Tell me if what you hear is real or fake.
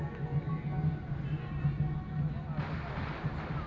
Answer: real